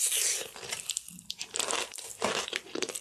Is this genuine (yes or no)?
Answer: yes